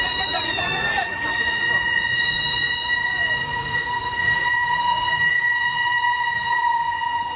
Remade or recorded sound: remade